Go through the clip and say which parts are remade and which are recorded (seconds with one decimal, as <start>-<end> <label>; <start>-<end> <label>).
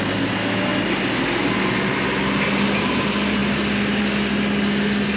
0.0-5.2 recorded